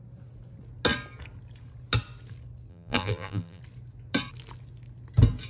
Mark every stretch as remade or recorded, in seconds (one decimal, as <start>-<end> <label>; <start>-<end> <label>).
0.0-2.7 recorded; 2.7-3.6 remade; 3.6-5.5 recorded